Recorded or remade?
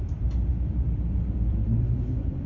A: remade